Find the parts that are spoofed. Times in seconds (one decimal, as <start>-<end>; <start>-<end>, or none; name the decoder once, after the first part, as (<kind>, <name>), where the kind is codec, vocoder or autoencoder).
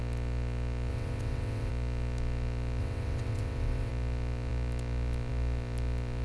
0.9-1.7 (vocoder, WaveNeXt); 2.8-3.9